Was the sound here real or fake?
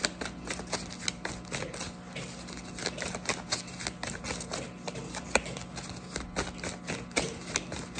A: real